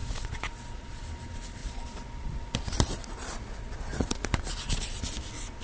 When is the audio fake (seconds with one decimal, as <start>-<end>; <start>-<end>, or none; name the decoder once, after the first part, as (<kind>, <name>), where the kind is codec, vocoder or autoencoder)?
0.0-1.0 (vocoder, Vocos); 1.6-5.0